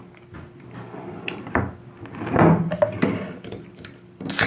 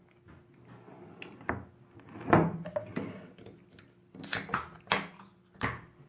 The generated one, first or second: first